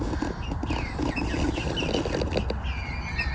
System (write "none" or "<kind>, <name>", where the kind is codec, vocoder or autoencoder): none